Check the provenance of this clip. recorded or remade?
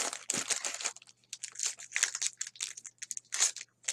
recorded